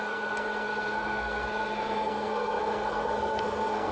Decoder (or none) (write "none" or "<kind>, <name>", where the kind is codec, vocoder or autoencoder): codec, SNAC